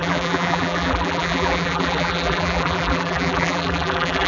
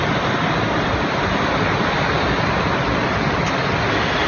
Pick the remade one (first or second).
first